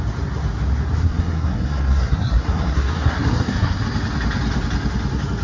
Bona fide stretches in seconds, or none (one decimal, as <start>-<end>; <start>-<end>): 0.0-1.0; 3.8-5.4